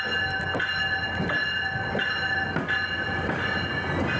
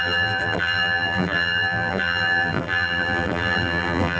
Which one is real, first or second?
first